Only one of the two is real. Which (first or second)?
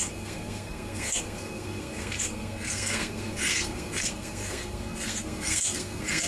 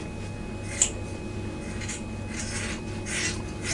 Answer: second